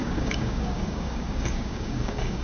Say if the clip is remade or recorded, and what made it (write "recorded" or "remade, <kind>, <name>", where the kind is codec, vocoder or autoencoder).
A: remade, codec, DAC